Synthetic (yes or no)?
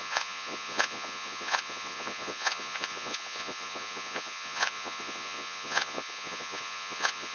yes